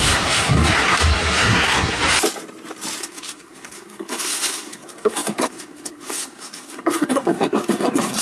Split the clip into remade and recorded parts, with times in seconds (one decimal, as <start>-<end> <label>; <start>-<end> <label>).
0.0-2.0 remade; 2.0-3.0 recorded; 3.0-8.2 remade

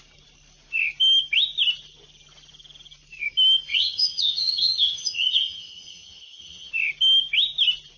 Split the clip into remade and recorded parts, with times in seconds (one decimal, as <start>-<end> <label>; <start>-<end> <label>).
0.0-3.7 recorded; 3.7-6.7 remade; 6.7-8.0 recorded

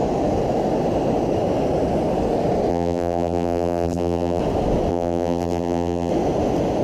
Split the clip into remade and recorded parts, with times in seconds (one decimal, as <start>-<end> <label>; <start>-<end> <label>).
0.0-2.7 recorded; 2.7-4.4 remade; 4.4-4.9 recorded; 4.9-6.1 remade; 6.1-6.8 recorded

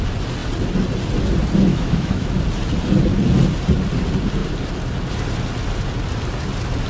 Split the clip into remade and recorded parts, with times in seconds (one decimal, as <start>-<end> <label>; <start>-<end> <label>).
0.0-1.7 recorded; 1.7-2.4 remade; 2.4-6.9 recorded

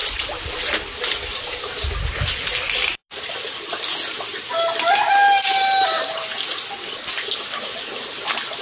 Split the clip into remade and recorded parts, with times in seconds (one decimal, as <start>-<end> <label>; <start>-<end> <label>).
0.0-8.6 recorded

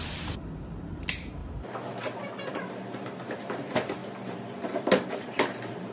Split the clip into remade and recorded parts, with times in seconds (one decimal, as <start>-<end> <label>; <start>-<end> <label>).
0.0-1.4 remade; 1.4-2.0 recorded; 2.0-5.9 remade

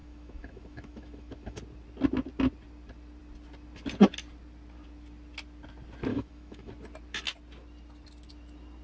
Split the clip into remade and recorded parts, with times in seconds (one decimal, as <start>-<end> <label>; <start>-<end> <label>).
0.0-1.6 remade; 1.6-6.1 recorded; 6.1-6.7 remade; 6.7-8.8 recorded

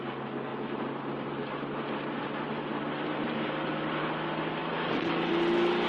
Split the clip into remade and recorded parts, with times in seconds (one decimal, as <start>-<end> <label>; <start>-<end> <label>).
0.0-2.7 recorded; 2.7-4.0 remade; 4.0-4.6 recorded; 4.6-5.3 remade; 5.3-5.9 recorded